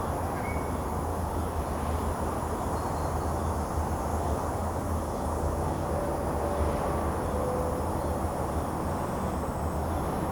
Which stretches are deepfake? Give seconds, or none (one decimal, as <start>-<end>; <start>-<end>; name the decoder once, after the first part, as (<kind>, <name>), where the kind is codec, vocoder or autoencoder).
1.1-1.6 (codec, DAC); 4.1-6.1